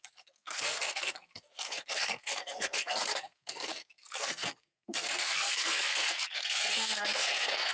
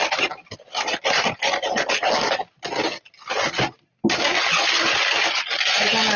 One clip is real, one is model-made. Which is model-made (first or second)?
first